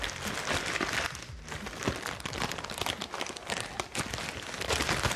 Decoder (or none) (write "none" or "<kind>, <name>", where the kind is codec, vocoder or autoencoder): none